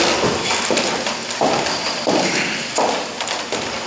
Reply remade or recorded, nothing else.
recorded